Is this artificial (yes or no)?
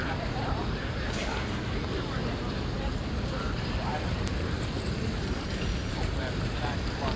yes